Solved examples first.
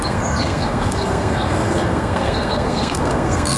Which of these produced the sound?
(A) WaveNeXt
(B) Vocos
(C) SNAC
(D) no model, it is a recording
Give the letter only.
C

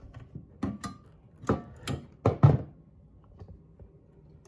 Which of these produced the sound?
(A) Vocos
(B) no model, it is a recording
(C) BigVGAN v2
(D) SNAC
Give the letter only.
B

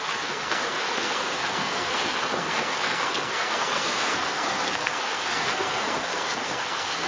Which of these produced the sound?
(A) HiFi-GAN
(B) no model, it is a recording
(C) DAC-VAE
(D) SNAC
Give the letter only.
D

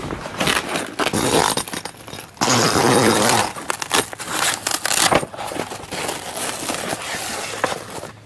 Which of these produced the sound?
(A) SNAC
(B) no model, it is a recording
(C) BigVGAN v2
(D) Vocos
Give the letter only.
B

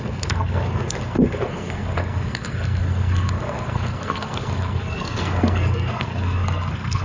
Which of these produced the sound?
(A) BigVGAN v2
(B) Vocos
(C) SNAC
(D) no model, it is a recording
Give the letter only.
C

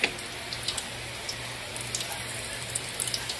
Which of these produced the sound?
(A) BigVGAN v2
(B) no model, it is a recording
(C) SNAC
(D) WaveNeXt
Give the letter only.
B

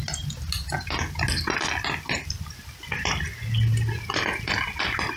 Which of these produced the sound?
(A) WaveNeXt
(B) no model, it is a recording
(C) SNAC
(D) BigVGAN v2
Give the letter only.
B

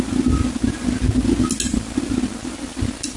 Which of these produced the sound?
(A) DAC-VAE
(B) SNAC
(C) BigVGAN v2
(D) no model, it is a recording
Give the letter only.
D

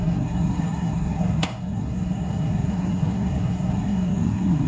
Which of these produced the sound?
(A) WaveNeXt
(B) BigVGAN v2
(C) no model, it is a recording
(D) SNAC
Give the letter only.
D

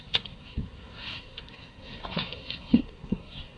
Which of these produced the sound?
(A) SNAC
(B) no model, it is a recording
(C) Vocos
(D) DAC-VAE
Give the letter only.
A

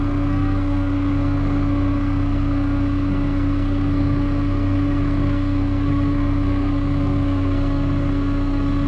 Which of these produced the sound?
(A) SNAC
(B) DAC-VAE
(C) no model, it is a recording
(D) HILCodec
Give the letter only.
A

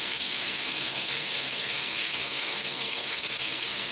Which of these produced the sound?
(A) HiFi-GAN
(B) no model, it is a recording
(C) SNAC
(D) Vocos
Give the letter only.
C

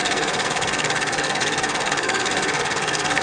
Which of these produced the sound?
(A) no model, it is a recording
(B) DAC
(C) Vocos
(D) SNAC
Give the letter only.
D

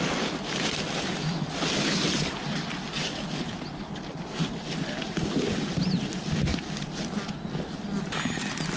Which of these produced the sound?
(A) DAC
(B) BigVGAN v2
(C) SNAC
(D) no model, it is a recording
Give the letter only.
D